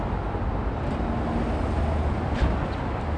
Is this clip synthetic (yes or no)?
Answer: no